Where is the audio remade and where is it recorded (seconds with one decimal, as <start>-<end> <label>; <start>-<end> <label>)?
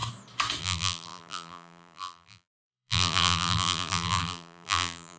0.0-0.6 recorded; 0.6-5.2 remade